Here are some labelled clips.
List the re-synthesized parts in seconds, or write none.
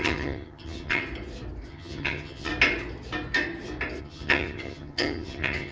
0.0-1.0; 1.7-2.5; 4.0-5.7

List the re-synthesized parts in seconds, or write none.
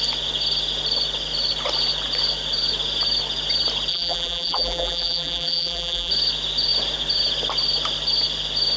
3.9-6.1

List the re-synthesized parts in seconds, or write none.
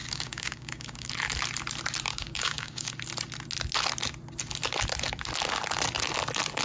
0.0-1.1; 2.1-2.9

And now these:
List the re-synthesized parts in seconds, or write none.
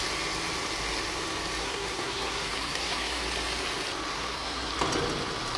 1.6-3.2; 4.1-4.7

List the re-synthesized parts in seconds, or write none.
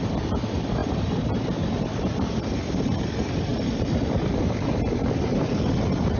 none